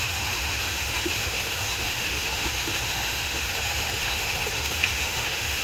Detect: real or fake fake